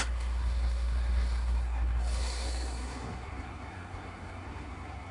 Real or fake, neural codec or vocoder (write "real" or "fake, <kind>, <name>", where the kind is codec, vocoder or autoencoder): fake, codec, SNAC